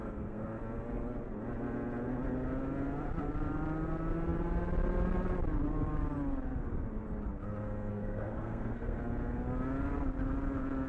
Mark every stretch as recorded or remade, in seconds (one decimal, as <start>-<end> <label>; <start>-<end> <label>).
0.0-0.6 remade; 0.6-7.9 recorded; 7.9-9.0 remade; 9.0-10.9 recorded